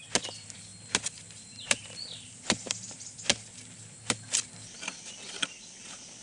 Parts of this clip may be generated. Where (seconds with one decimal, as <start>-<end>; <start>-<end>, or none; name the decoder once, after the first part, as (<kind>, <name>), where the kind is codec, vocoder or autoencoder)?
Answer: none